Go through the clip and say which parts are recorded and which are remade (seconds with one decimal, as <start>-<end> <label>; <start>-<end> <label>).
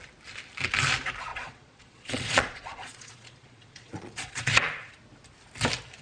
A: 0.0-1.3 recorded; 1.3-4.9 remade; 4.9-6.0 recorded